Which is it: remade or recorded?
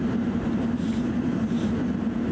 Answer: remade